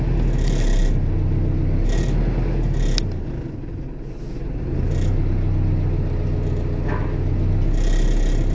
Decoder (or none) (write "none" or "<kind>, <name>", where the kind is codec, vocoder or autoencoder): none